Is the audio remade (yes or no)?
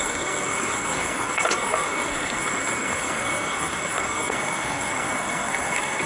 yes